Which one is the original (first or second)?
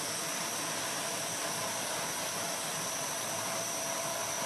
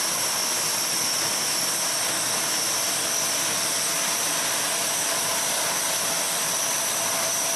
second